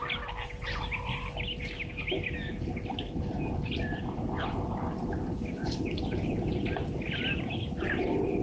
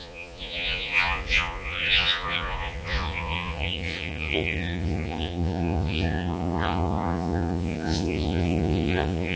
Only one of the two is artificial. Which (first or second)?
second